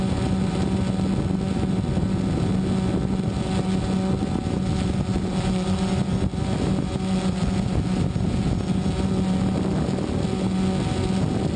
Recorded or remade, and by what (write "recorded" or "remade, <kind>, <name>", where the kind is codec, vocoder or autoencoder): recorded